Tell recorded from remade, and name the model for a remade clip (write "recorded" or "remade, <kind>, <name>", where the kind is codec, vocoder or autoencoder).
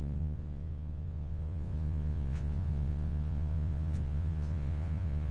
remade, vocoder, Vocos